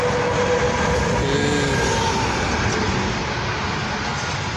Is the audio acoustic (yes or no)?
yes